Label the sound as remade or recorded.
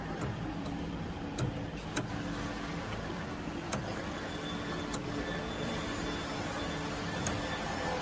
recorded